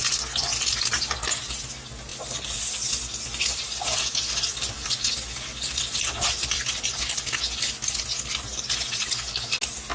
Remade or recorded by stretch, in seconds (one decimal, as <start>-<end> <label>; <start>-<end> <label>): 0.0-2.1 recorded; 2.1-7.2 remade; 7.2-9.9 recorded